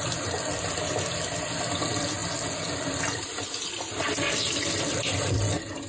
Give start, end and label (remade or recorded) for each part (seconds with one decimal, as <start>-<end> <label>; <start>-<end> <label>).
0.0-5.9 recorded